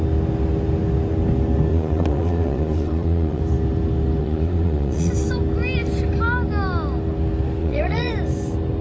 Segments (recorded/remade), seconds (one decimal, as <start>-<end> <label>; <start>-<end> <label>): 0.0-1.7 recorded; 1.7-3.4 remade; 3.4-4.2 recorded; 4.2-5.1 remade; 5.1-7.6 recorded; 7.6-8.1 remade; 8.1-8.8 recorded